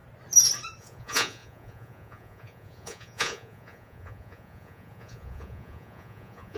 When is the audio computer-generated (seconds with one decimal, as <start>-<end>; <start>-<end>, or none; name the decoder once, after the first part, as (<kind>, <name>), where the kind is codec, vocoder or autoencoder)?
0.8-6.6 (vocoder, Vocos)